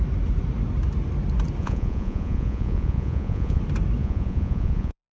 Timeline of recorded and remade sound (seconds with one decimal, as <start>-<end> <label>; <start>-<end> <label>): 0.0-1.6 recorded; 1.6-3.6 remade; 3.6-4.0 recorded; 4.0-5.2 remade